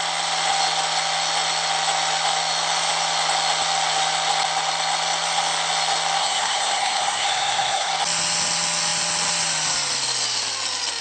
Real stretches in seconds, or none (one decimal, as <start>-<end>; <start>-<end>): 0.0-6.2; 7.9-11.0